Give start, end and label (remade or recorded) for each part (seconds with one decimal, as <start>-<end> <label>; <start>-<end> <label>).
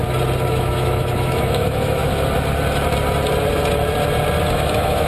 0.0-0.5 recorded; 0.5-2.1 remade; 2.1-4.5 recorded; 4.5-5.1 remade